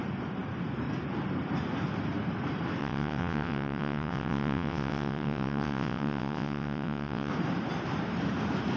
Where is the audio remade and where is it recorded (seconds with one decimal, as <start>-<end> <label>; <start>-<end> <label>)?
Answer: 0.0-2.8 recorded; 2.8-7.3 remade; 7.3-8.8 recorded